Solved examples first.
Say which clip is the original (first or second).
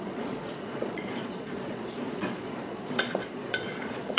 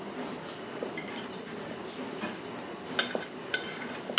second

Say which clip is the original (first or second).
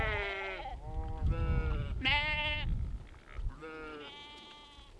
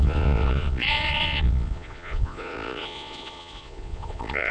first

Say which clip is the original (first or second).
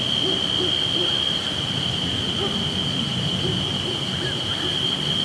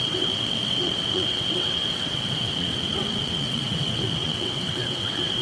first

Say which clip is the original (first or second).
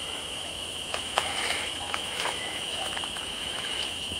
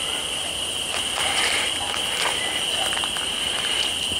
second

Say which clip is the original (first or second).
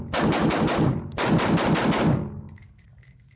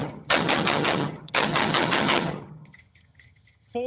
first